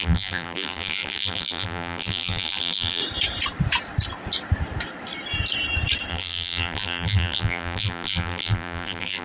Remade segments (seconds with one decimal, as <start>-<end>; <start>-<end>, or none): 0.0-3.0; 6.1-9.2